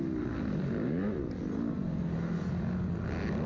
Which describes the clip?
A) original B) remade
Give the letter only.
A